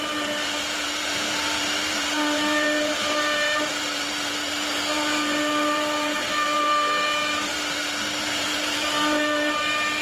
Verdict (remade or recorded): remade